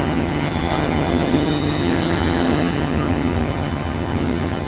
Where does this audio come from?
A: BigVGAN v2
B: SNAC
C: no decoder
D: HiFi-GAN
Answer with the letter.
D